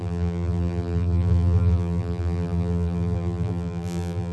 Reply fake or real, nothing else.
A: fake